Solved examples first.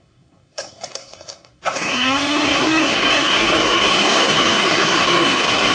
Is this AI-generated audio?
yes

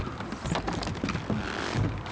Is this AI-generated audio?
no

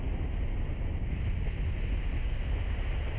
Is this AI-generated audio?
no